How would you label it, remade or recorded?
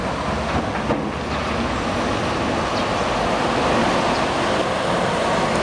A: recorded